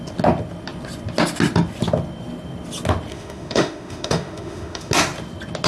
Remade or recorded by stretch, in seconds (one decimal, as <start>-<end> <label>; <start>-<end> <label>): 0.0-3.1 recorded; 3.1-4.9 remade; 4.9-5.7 recorded